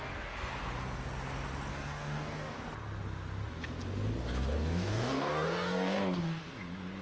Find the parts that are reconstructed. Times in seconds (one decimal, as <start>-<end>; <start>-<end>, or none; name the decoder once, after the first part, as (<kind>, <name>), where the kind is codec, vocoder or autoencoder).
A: 0.0-0.5 (codec, DAC); 1.7-2.6; 4.2-6.4